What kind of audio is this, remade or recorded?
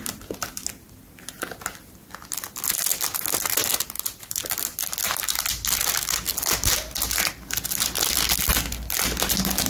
recorded